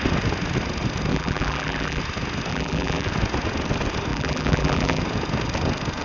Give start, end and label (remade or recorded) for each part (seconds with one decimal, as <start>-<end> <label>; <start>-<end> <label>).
0.0-1.1 recorded; 1.1-2.0 remade; 2.0-2.5 recorded; 2.5-3.1 remade; 3.1-4.1 recorded; 4.1-5.0 remade; 5.0-6.0 recorded